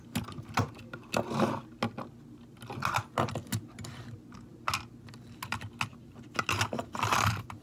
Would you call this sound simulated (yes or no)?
no